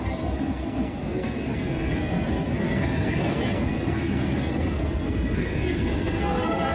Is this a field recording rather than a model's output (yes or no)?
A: no